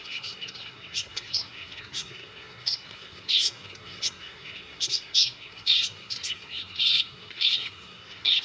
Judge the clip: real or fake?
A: fake